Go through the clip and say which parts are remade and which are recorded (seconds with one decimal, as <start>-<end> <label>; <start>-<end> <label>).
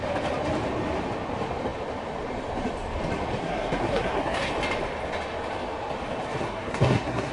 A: 0.0-3.4 recorded; 3.4-4.5 remade; 4.5-6.4 recorded; 6.4-7.3 remade